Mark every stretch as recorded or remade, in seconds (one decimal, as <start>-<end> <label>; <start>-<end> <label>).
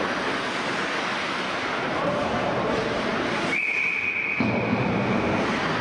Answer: 0.0-1.1 recorded; 1.1-4.1 remade; 4.1-4.7 recorded; 4.7-5.8 remade